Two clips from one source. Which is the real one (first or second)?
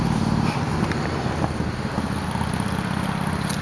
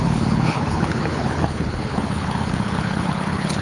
first